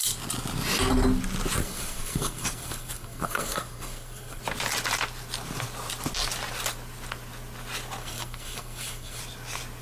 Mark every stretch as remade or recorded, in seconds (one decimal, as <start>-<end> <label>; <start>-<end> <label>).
0.0-1.6 recorded; 1.6-4.4 remade; 4.4-8.0 recorded; 8.0-9.2 remade; 9.2-9.8 recorded